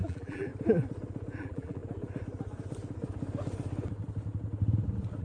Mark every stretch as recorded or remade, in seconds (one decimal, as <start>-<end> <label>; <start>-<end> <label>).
0.0-0.5 remade; 0.5-1.4 recorded; 1.4-1.8 remade; 1.8-5.2 recorded

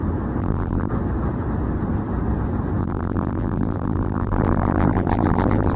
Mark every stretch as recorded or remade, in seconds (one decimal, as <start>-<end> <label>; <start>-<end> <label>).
0.0-0.4 recorded; 0.4-0.9 remade; 0.9-2.8 recorded; 2.8-5.8 remade

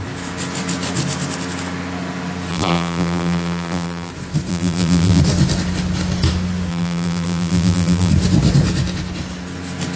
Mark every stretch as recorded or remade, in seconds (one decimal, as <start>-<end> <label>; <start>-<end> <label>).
0.0-2.5 recorded; 2.5-4.1 remade; 4.1-4.5 recorded; 4.5-5.2 remade; 5.2-6.7 recorded; 6.7-8.1 remade; 8.1-10.0 recorded

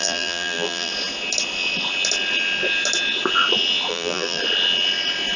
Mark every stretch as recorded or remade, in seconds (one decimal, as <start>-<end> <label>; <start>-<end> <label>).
0.0-0.9 remade; 0.9-3.9 recorded; 3.9-4.4 remade; 4.4-5.4 recorded

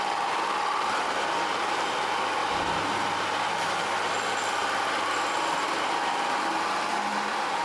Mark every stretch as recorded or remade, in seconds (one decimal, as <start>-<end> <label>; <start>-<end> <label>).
0.0-4.6 remade; 4.6-6.0 recorded; 6.0-7.6 remade

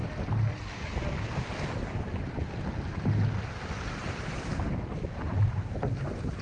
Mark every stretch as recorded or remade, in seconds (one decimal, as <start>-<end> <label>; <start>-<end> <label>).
0.0-3.8 recorded; 3.8-6.4 remade

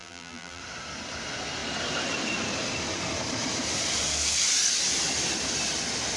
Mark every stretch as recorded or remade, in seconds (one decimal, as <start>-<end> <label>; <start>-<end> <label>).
0.0-0.6 remade; 0.6-6.2 recorded

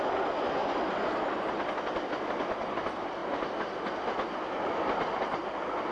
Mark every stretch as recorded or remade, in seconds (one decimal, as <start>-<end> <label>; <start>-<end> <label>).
0.0-5.9 recorded